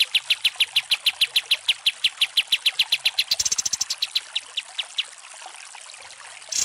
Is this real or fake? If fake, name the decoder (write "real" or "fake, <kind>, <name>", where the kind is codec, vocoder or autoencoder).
real